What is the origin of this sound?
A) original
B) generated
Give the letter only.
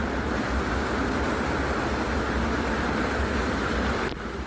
A